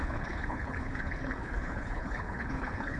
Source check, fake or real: fake